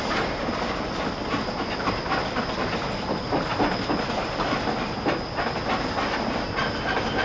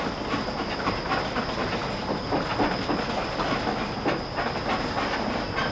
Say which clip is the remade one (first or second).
first